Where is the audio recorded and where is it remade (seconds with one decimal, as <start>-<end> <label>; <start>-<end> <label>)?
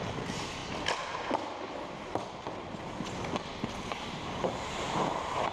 0.0-0.6 remade; 0.6-3.9 recorded; 3.9-5.5 remade